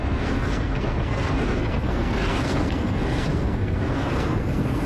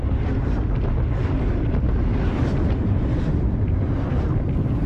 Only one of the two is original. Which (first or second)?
second